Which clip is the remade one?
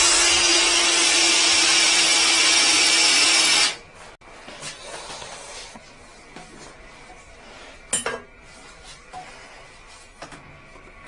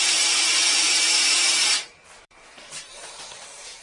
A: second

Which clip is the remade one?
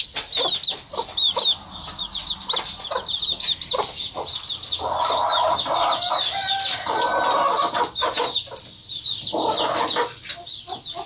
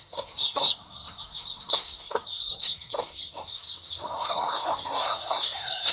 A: second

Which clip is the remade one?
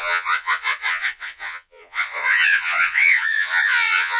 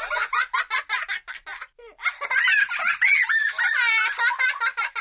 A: first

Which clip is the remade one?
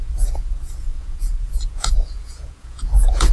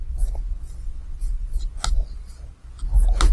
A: first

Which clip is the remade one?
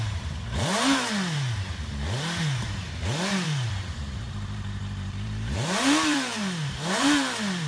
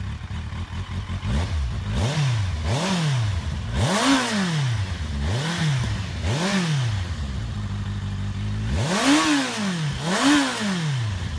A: first